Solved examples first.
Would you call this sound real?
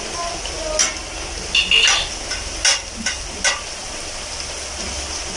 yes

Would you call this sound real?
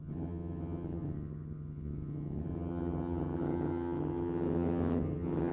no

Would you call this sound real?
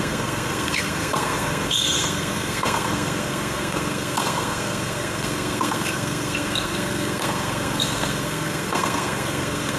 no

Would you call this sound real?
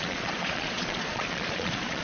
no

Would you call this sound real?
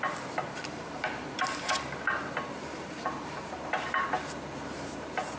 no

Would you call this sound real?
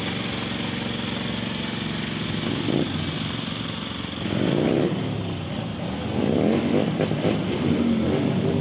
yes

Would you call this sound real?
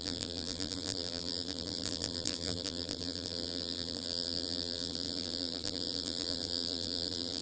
no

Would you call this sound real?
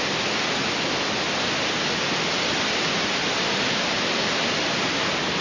yes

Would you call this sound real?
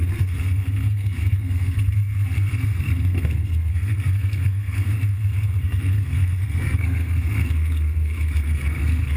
no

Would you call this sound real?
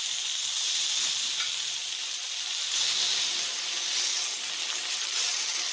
yes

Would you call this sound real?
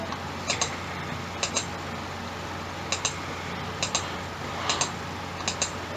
yes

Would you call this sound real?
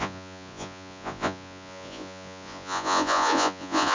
no